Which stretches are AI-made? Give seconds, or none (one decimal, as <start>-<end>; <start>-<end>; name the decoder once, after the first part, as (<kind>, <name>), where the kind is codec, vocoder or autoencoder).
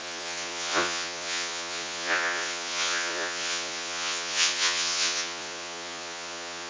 0.0-6.7 (vocoder, Vocos)